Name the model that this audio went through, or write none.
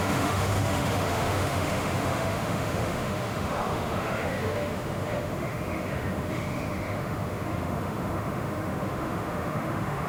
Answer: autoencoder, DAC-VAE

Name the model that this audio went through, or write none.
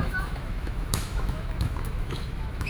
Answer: autoencoder, DAC-VAE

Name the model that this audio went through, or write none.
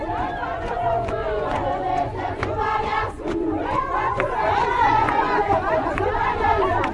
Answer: vocoder, Vocos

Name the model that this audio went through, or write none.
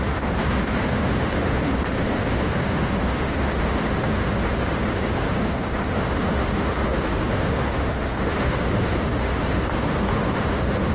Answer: autoencoder, DAC-VAE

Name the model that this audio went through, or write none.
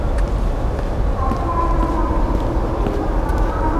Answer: none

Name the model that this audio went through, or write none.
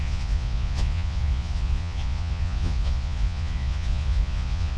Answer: vocoder, Vocos